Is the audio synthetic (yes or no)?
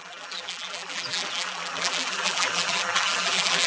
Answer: yes